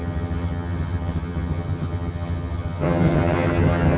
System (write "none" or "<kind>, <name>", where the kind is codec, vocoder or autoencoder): vocoder, HiFi-GAN